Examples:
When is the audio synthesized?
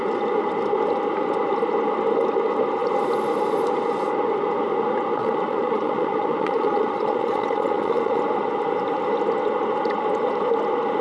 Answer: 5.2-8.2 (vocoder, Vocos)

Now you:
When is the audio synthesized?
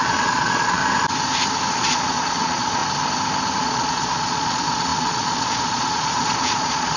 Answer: 0.0-0.8 (vocoder, Vocos); 1.7-2.8; 3.6-7.0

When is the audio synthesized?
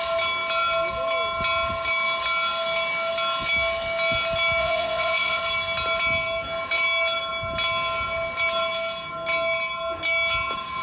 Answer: 4.6-5.4 (vocoder, Vocos)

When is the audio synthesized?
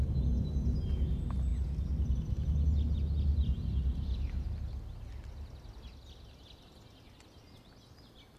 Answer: none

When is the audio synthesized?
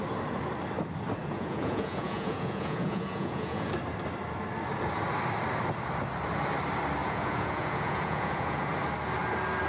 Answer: 1.2-3.7 (vocoder, Vocos); 7.0-8.7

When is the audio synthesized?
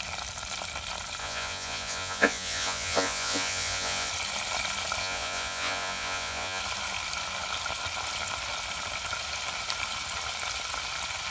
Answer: 1.2-4.1 (vocoder, Vocos); 5.0-6.6